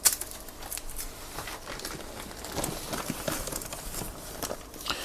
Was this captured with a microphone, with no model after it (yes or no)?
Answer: no